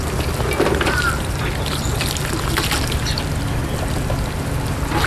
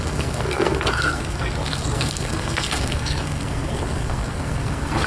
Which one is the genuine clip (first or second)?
first